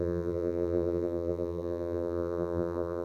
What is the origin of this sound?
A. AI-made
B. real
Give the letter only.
A